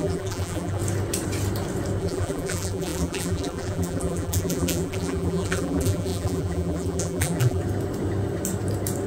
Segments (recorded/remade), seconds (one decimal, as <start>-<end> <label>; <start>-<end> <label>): 0.0-0.8 remade; 0.8-2.0 recorded; 2.0-7.6 remade; 7.6-9.1 recorded